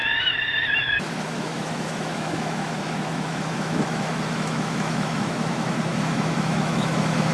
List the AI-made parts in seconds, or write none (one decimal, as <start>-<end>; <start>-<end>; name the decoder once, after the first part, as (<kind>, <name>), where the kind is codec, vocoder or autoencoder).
1.1-7.3 (autoencoder, DAC-VAE)